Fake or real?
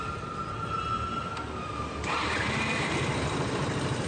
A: fake